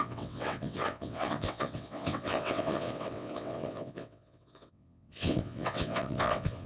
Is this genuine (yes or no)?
no